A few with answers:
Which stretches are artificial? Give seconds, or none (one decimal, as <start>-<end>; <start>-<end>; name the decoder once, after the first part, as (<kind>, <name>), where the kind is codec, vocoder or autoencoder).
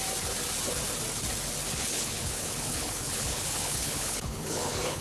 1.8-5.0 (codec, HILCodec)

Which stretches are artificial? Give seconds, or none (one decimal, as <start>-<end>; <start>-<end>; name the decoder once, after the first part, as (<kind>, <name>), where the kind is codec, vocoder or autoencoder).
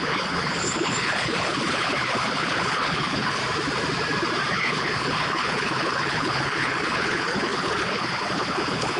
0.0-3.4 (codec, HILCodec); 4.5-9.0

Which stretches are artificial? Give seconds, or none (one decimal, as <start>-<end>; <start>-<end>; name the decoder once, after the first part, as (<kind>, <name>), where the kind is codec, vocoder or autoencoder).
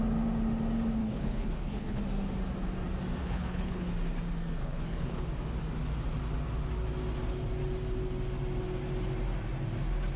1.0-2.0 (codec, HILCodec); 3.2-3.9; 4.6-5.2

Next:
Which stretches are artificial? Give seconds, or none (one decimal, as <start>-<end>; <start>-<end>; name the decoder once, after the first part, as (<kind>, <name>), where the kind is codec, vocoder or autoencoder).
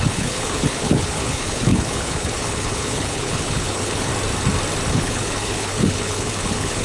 0.0-4.1 (codec, HILCodec); 4.9-6.8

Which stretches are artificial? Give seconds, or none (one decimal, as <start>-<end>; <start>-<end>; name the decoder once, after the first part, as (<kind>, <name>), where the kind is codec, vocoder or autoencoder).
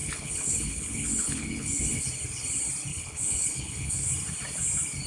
0.0-2.0 (codec, HILCodec); 2.9-4.1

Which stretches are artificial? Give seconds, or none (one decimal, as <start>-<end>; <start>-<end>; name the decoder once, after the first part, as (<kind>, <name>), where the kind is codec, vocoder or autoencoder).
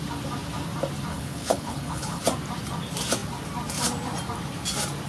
1.1-2.2 (codec, HILCodec)